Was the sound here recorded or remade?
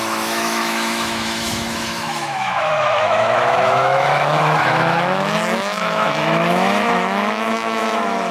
remade